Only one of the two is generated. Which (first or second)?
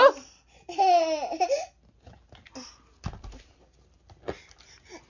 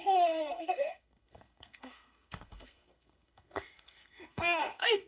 second